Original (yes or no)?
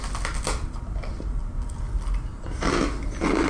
yes